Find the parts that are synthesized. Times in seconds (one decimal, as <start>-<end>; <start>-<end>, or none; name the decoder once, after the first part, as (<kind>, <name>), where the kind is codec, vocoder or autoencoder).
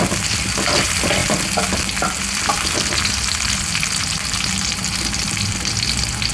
none